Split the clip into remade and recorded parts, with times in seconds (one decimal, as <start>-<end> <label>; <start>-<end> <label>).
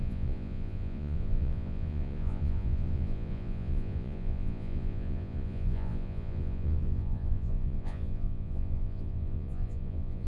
0.0-10.3 remade